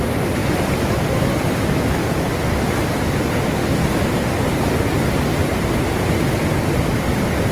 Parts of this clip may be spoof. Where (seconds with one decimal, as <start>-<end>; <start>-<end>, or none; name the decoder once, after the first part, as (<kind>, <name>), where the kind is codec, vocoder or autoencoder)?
none